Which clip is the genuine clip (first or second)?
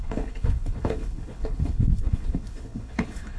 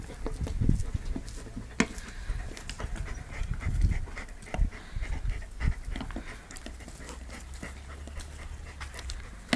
second